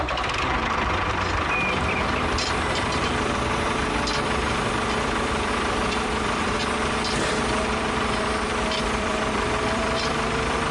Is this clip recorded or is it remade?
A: remade